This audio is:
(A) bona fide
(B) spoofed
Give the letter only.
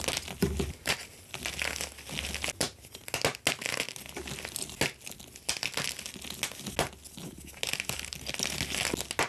A